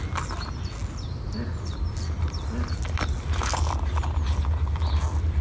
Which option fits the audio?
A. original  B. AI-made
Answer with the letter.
A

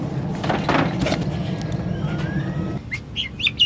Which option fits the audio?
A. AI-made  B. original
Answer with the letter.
B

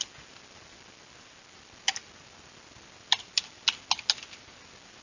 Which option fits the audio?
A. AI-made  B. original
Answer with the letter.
B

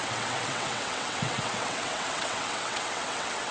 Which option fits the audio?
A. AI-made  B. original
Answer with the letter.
A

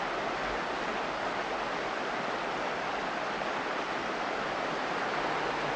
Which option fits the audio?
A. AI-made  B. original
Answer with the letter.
B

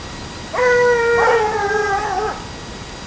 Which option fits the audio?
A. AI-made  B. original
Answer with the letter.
B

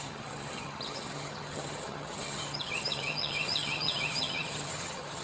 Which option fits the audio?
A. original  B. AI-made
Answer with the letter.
B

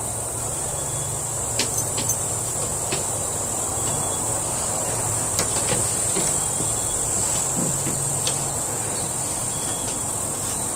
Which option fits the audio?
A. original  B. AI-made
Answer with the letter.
A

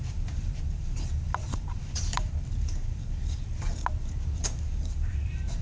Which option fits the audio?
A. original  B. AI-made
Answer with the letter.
B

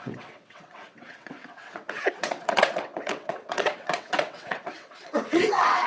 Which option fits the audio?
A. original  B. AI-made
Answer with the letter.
B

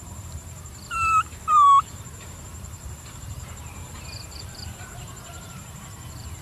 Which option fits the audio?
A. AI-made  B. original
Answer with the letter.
A